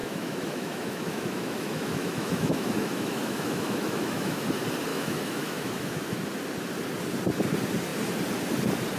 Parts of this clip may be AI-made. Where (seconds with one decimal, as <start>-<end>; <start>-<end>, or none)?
0.0-4.5; 4.9-6.2